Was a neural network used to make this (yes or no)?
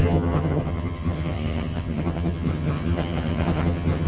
yes